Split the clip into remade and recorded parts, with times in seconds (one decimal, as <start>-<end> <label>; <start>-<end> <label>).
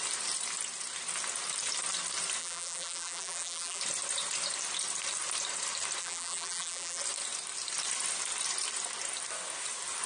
0.0-2.4 recorded; 2.4-3.8 remade; 3.8-6.0 recorded; 6.0-7.0 remade; 7.0-10.1 recorded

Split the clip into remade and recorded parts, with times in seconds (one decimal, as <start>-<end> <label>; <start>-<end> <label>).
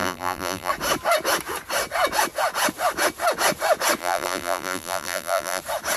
0.0-0.7 remade; 0.7-4.0 recorded; 4.0-5.6 remade; 5.6-6.0 recorded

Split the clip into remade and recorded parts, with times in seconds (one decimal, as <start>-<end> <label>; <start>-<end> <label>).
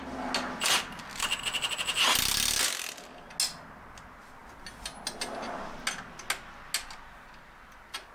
0.0-8.1 recorded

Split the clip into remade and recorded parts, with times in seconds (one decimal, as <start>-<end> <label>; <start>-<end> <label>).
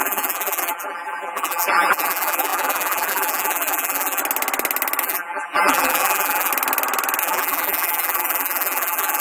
0.0-4.2 remade; 4.2-5.0 recorded; 5.0-6.5 remade; 6.5-7.2 recorded; 7.2-9.2 remade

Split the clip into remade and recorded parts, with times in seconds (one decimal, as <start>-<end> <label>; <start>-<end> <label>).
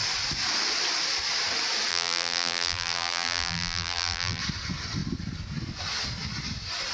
0.0-1.9 recorded; 1.9-4.4 remade; 4.4-6.9 recorded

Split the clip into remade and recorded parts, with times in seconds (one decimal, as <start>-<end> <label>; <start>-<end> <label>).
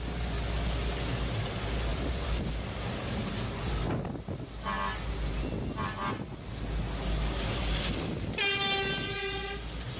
0.0-1.9 recorded; 1.9-2.5 remade; 2.5-10.0 recorded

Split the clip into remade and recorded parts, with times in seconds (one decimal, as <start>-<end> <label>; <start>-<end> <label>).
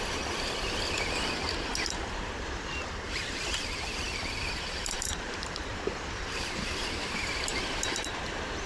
0.0-8.7 remade